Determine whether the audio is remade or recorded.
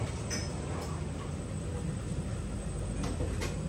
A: recorded